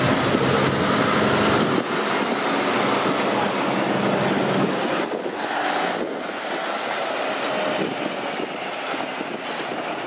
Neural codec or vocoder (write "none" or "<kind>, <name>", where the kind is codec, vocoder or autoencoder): none